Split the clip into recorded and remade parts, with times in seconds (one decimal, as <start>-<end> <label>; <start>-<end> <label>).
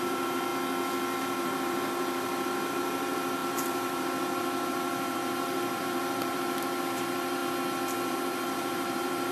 0.0-0.5 remade; 0.5-1.2 recorded; 1.2-7.4 remade; 7.4-8.1 recorded; 8.1-9.3 remade